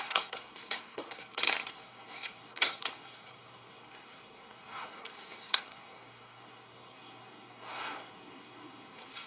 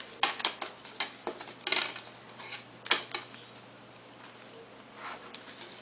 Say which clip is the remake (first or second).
first